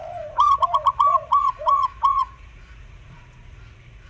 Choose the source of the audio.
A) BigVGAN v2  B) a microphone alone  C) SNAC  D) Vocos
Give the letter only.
D